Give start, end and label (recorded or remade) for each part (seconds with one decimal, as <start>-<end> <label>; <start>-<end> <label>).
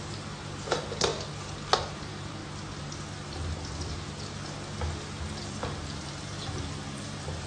0.0-1.1 remade; 1.1-1.8 recorded; 1.8-2.4 remade; 2.4-5.4 recorded; 5.4-7.5 remade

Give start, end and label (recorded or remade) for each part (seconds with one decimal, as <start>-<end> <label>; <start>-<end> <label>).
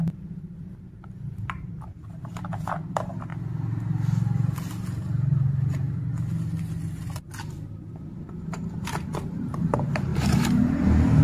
0.0-3.3 remade; 3.3-7.9 recorded; 7.9-11.2 remade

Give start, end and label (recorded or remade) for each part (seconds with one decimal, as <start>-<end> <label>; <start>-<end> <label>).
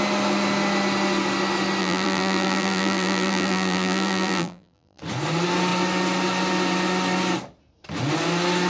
0.0-1.8 recorded; 1.8-5.0 remade; 5.0-8.7 recorded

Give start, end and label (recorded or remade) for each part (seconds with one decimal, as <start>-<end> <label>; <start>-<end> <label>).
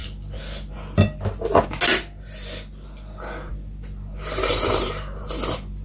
0.0-4.4 recorded; 4.4-5.3 remade; 5.3-5.8 recorded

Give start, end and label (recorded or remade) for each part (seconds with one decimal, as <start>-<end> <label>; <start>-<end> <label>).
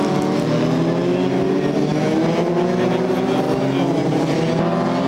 0.0-5.1 recorded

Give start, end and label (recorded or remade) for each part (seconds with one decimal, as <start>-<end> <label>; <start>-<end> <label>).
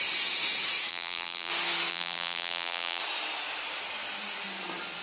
0.0-0.9 recorded; 0.9-1.5 remade; 1.5-1.9 recorded; 1.9-3.0 remade; 3.0-5.0 recorded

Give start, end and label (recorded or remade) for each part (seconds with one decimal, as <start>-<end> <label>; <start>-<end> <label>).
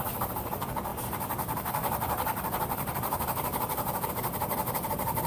0.0-0.9 recorded; 0.9-4.1 remade; 4.1-5.3 recorded